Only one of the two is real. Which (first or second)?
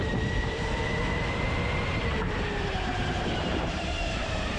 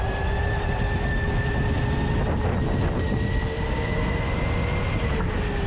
second